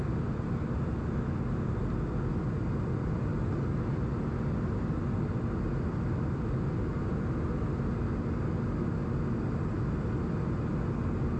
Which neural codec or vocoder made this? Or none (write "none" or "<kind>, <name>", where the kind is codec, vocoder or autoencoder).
none